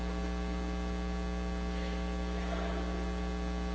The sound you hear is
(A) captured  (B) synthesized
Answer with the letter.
A